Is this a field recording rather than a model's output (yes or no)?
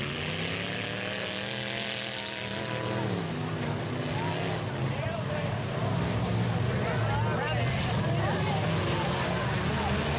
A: yes